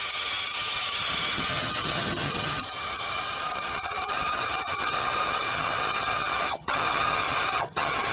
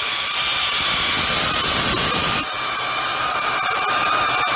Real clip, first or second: second